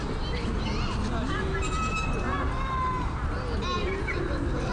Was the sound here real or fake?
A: real